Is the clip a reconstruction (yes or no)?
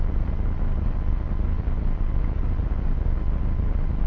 no